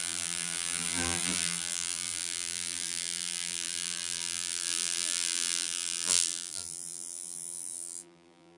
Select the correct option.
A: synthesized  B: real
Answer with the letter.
A